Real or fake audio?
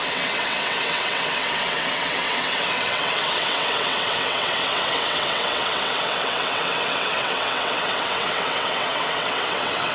fake